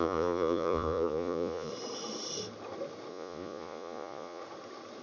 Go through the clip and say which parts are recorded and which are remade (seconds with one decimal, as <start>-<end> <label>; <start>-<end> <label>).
0.0-1.7 remade; 1.7-3.1 recorded; 3.1-4.4 remade; 4.4-5.0 recorded